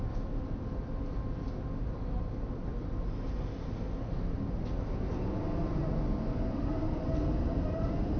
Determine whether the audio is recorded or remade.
recorded